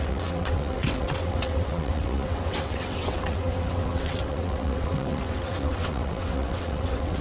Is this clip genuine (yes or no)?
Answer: no